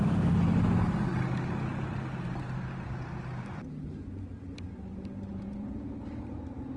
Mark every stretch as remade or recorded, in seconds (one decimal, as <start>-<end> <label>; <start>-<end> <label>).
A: 0.0-5.3 recorded; 5.3-6.0 remade; 6.0-6.8 recorded